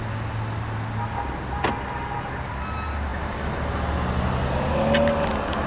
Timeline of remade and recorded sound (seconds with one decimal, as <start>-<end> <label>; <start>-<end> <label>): 0.0-5.7 recorded